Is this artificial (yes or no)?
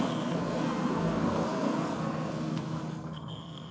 yes